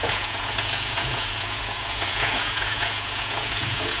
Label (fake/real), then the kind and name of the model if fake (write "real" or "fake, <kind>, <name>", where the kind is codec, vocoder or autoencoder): fake, vocoder, Vocos